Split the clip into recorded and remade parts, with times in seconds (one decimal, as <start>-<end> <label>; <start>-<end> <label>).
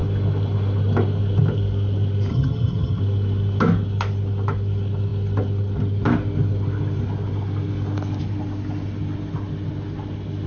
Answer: 0.0-2.3 recorded; 2.3-3.0 remade; 3.0-10.5 recorded